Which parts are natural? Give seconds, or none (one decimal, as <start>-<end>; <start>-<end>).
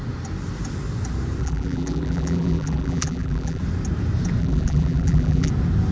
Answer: 0.0-1.4; 3.6-4.4; 5.5-5.9